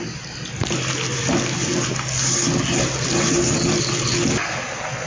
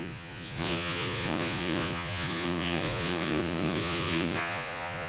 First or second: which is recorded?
first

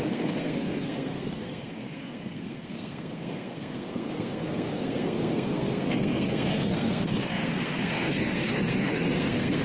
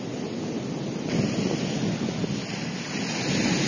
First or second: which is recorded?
second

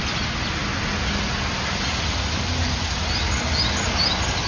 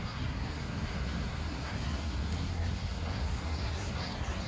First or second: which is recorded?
first